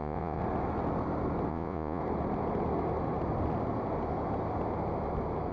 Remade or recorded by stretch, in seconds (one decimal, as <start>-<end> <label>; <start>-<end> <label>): 0.0-0.4 remade; 0.4-1.5 recorded; 1.5-2.0 remade; 2.0-5.5 recorded